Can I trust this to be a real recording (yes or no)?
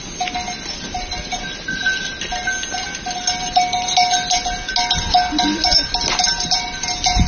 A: yes